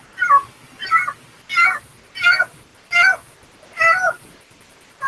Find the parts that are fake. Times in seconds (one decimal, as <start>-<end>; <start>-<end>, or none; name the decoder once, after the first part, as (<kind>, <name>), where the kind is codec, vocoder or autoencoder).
0.0-1.0 (vocoder, BigVGAN v2); 2.0-5.1